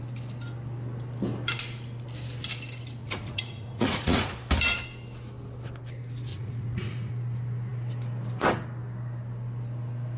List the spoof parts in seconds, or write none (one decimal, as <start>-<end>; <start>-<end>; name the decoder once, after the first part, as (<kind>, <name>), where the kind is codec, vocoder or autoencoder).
3.0-4.3 (vocoder, Vocos); 6.3-7.1

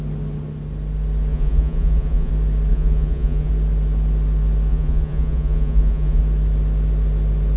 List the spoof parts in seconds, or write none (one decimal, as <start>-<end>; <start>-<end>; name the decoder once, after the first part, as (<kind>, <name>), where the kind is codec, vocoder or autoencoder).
1.3-2.3 (vocoder, Vocos); 2.7-3.5; 4.7-6.2